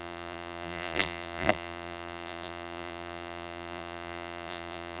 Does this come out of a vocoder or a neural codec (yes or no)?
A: yes